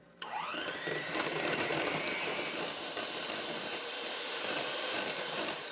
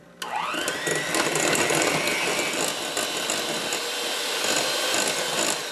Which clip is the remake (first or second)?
first